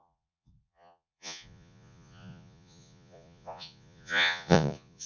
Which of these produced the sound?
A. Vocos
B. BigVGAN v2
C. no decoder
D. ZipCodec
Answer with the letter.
A